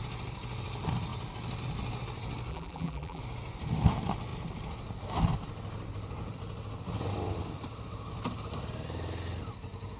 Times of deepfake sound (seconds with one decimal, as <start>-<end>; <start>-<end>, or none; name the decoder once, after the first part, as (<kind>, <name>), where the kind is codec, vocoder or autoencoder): 2.5-3.2 (vocoder, BigVGAN v2)